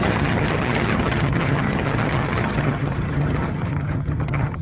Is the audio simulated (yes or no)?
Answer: yes